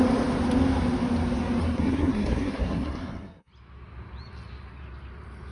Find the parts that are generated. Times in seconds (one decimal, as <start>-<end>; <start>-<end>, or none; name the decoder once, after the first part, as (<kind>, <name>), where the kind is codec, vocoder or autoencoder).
1.6-3.5 (codec, SNAC)